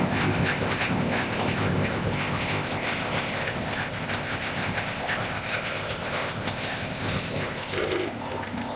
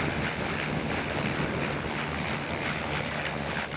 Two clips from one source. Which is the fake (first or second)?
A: first